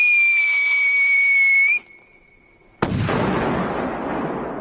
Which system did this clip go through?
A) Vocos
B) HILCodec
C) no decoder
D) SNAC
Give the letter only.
C